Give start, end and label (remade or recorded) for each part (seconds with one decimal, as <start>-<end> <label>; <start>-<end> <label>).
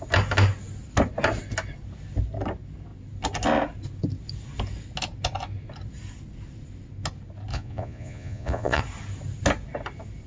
0.0-7.5 recorded; 7.5-8.8 remade; 8.8-10.3 recorded